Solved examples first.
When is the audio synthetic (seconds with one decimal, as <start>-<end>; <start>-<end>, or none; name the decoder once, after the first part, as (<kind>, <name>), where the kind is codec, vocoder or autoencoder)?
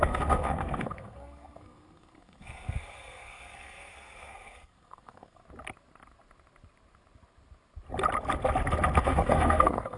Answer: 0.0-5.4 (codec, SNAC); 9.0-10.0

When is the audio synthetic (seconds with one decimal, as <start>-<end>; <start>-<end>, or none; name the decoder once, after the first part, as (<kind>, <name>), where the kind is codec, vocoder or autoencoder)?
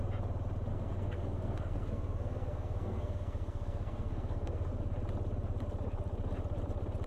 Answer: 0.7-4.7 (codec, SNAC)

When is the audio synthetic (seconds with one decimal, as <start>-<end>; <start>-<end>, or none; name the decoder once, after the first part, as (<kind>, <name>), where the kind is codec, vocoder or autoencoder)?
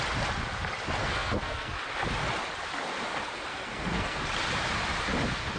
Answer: 1.0-1.8 (codec, SNAC); 3.5-4.2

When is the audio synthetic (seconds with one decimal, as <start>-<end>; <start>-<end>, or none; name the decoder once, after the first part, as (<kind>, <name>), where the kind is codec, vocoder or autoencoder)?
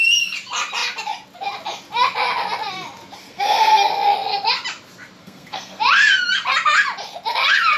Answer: 3.2-3.9 (codec, SNAC); 5.2-5.8